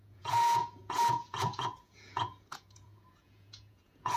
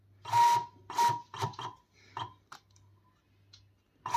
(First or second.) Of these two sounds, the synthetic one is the first